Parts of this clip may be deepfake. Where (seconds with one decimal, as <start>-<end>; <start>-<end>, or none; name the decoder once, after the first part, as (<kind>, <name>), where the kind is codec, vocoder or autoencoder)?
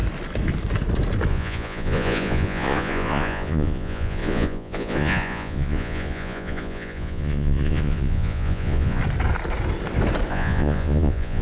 1.3-9.0 (vocoder, Vocos); 10.3-11.4